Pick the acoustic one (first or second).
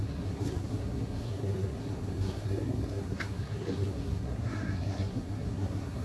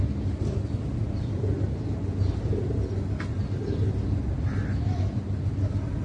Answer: second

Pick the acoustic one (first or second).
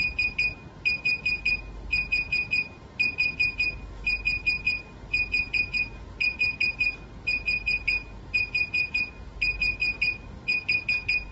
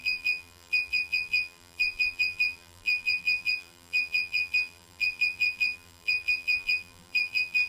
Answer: first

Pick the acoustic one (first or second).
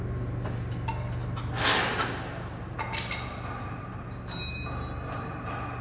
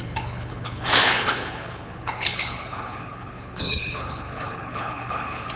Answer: first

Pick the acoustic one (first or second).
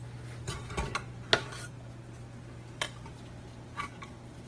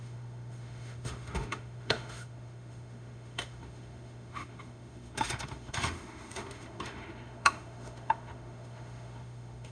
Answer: first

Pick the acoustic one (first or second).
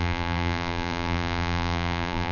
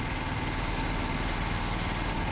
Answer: second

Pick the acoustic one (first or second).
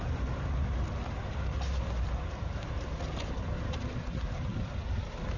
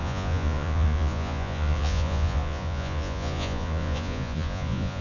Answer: first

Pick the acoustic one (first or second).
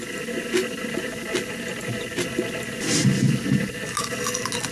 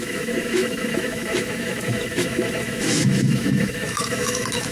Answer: first